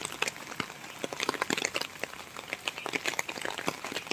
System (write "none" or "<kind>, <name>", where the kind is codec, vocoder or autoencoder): none